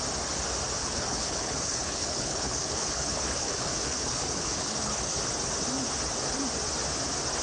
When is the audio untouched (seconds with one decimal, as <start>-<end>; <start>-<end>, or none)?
0.0-0.8; 5.2-7.4